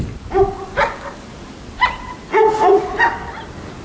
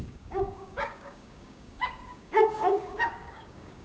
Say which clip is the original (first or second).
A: first